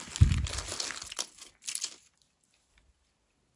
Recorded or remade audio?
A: recorded